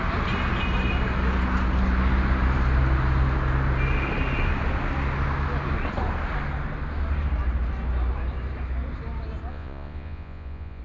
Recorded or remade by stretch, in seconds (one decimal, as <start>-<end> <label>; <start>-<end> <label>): 0.0-9.5 recorded; 9.5-10.8 remade